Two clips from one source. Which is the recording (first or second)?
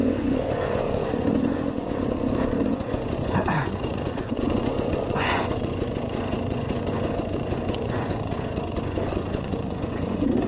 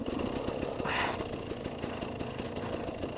second